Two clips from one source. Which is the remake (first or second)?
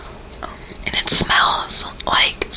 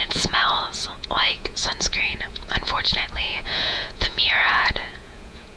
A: second